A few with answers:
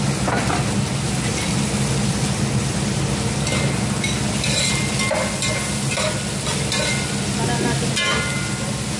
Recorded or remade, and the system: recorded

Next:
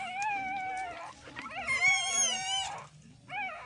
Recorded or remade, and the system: recorded